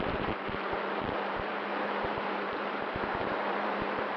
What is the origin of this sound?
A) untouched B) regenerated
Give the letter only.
B